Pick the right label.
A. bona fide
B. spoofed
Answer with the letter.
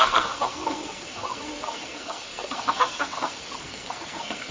B